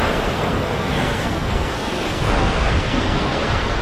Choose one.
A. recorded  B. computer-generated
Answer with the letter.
B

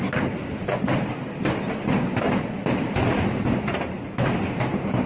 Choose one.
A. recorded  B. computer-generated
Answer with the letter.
A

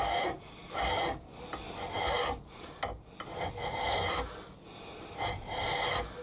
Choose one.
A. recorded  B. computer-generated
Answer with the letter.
A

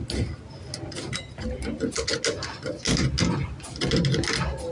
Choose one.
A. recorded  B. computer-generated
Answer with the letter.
A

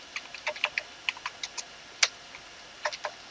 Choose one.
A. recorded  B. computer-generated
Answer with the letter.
A